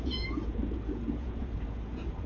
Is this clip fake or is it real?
fake